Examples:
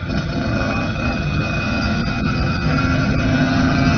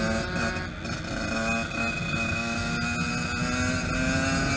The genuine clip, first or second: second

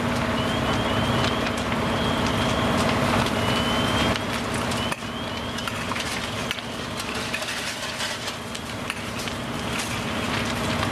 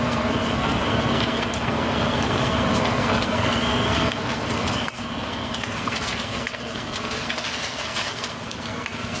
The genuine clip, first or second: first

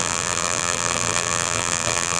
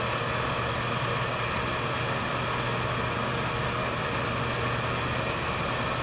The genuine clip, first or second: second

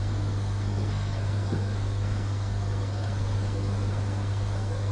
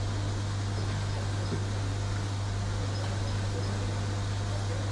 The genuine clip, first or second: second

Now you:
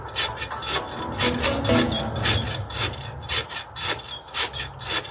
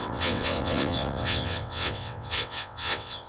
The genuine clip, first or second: first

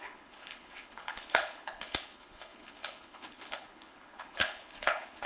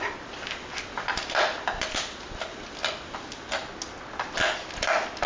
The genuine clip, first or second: second